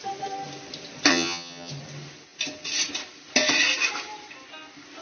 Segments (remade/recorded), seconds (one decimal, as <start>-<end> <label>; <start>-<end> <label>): 0.0-1.1 recorded; 1.1-1.7 remade; 1.7-5.0 recorded